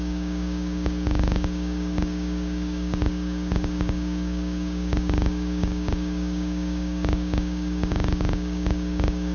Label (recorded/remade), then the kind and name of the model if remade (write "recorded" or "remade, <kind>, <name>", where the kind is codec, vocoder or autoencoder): remade, codec, DAC